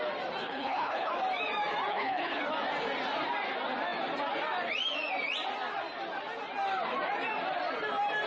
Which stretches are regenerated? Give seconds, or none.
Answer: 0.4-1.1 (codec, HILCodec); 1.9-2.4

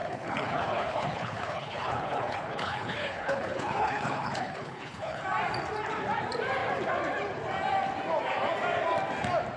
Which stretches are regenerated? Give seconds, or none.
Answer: 0.0-5.2 (codec, HILCodec)

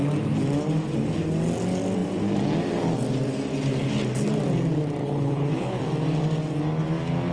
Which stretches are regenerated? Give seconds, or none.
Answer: 5.0-5.8 (codec, HILCodec)

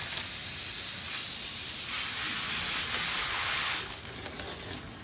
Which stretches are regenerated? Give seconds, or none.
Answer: 3.2-4.0 (codec, HILCodec)

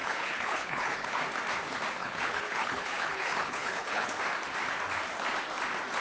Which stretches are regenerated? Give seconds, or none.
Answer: 0.0-1.2 (codec, HILCodec); 2.0-4.1